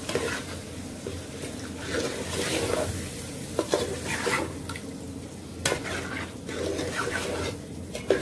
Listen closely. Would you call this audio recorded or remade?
recorded